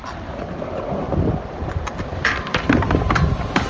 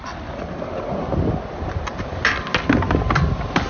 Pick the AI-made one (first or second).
first